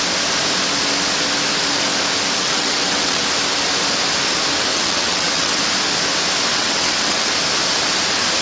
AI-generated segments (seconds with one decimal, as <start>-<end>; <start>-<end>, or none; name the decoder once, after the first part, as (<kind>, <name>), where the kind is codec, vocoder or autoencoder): 2.4-3.2 (vocoder, WaveNeXt); 4.7-5.6; 6.5-7.3